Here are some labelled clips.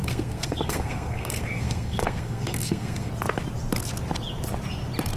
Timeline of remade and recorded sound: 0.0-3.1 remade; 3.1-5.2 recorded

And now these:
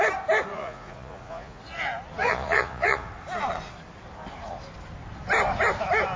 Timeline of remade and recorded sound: 0.0-0.5 recorded; 0.5-1.6 remade; 1.6-2.2 recorded; 2.2-3.1 remade; 3.1-6.2 recorded

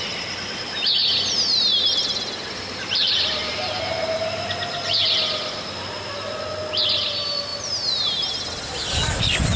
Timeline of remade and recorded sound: 0.0-9.6 recorded

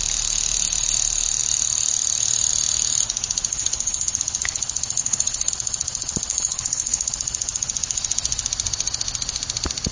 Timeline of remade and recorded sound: 0.0-3.5 recorded; 3.5-4.2 remade; 4.2-5.0 recorded; 5.0-5.5 remade; 5.5-6.3 recorded; 6.3-7.1 remade; 7.1-9.9 recorded

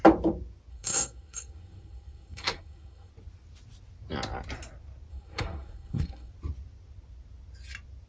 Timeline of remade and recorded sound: 0.0-0.7 recorded; 0.7-3.1 remade; 3.1-5.1 recorded; 5.1-6.3 remade; 6.3-8.1 recorded